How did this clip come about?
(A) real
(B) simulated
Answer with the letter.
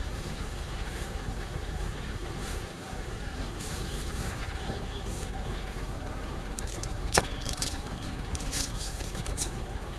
B